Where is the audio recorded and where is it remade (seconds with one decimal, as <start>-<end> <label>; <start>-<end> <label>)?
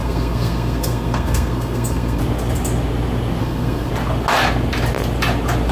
0.0-2.2 remade; 2.2-3.4 recorded; 3.4-3.9 remade; 3.9-5.7 recorded